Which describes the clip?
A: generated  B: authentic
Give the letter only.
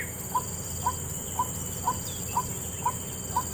B